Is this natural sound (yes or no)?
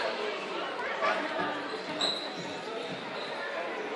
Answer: yes